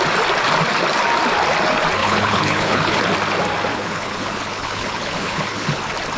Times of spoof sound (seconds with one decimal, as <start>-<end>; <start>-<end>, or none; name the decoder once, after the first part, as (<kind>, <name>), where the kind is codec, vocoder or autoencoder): 2.0-3.0 (codec, HILCodec); 3.7-5.8